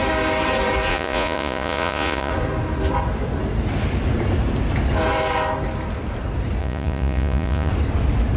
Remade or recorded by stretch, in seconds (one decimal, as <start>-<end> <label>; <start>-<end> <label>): 0.0-0.9 recorded; 0.9-2.3 remade; 2.3-6.6 recorded; 6.6-7.7 remade; 7.7-8.4 recorded